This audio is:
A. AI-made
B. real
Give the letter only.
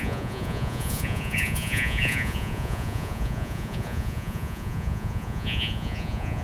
A